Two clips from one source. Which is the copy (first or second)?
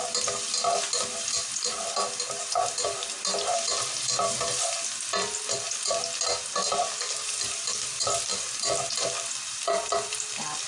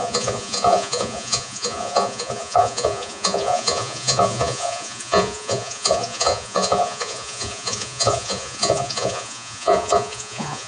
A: second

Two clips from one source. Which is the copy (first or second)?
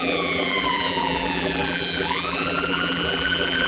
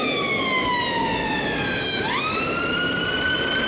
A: first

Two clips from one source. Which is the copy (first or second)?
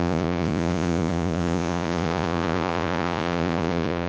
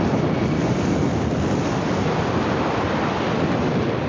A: first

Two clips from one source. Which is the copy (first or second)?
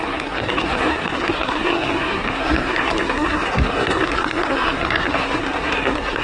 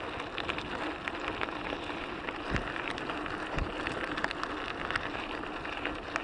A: first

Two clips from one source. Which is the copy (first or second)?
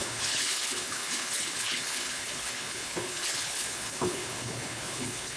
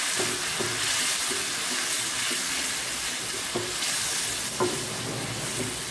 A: first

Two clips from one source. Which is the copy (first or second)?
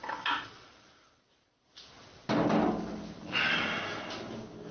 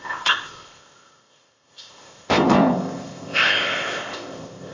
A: second